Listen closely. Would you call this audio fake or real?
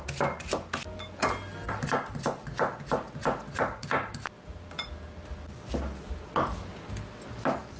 real